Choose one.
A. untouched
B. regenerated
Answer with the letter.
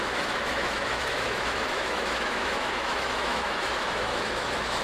B